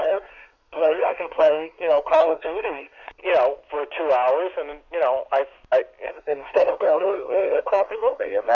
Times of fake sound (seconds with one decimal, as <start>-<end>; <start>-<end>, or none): 0.0-3.2; 6.1-8.5